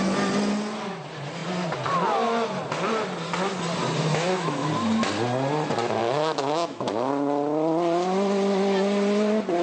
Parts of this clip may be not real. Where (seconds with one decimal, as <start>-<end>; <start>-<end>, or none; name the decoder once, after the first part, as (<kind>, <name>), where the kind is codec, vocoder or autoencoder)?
4.1-4.7 (autoencoder, DAC-VAE); 6.0-7.1